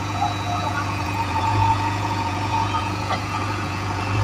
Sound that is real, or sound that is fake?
fake